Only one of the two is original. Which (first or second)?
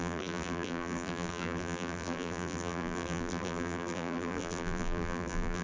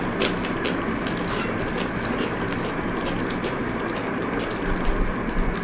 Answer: second